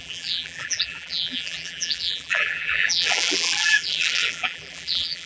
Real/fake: fake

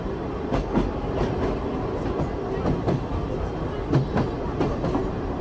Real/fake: real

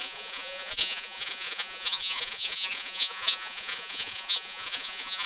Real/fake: fake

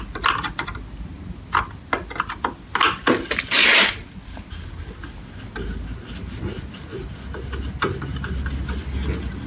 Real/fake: real